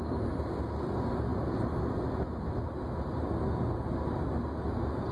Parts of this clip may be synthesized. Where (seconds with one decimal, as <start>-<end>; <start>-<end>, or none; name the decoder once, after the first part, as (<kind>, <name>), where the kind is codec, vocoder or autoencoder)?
none